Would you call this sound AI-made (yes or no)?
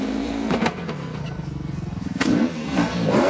yes